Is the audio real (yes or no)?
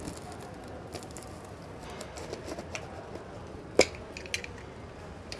yes